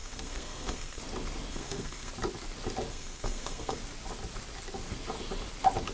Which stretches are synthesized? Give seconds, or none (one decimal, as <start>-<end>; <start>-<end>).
0.0-1.0; 1.5-2.1; 2.9-3.8